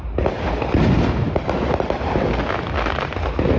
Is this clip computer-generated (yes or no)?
no